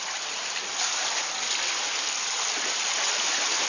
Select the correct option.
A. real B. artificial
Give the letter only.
A